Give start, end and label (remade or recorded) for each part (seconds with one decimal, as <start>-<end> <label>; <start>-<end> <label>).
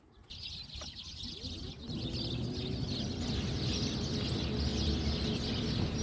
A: 0.0-6.0 recorded